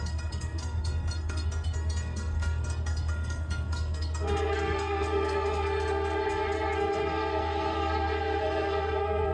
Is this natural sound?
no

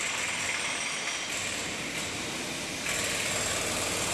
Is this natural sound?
yes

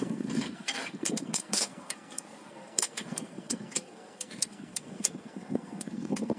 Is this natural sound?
no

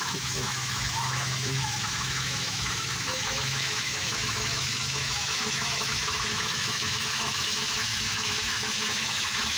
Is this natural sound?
no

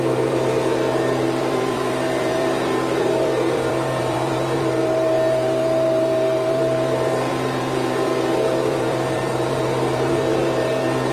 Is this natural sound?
no